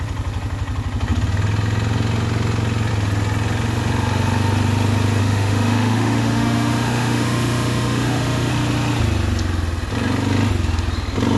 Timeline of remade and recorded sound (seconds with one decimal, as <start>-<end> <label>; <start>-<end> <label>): 0.0-5.2 recorded; 5.2-8.5 remade; 8.5-11.4 recorded

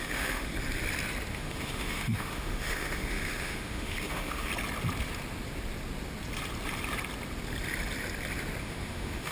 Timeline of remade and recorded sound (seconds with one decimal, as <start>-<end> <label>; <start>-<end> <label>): 0.0-0.5 remade; 0.5-1.3 recorded; 1.3-4.5 remade; 4.5-8.6 recorded; 8.6-9.3 remade

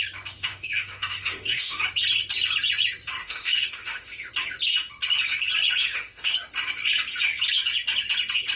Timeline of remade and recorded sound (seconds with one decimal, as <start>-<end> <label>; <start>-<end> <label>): 0.0-0.4 recorded; 0.4-1.8 remade; 1.8-3.2 recorded; 3.2-4.3 remade; 4.3-5.8 recorded; 5.8-6.3 remade; 6.3-8.6 recorded

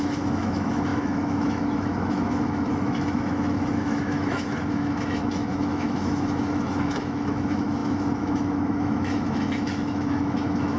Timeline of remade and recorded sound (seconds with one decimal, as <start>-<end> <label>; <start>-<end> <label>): 0.0-10.8 remade

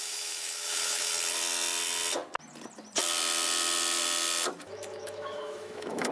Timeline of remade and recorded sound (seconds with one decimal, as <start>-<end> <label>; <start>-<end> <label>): 0.0-1.1 remade; 1.1-4.6 recorded; 4.6-6.1 remade